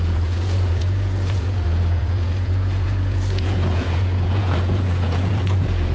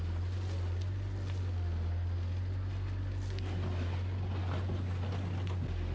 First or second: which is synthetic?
first